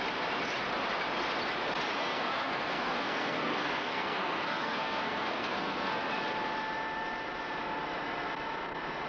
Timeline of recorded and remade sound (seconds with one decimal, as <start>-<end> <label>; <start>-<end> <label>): 0.0-2.0 recorded; 2.0-6.1 remade; 6.1-9.1 recorded